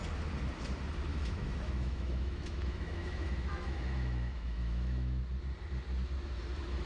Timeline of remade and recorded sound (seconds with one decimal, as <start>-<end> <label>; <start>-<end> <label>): 0.0-1.1 recorded; 1.1-5.2 remade; 5.2-6.9 recorded